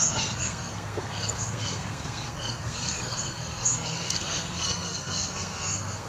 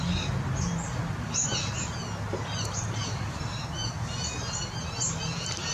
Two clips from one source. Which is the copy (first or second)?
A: first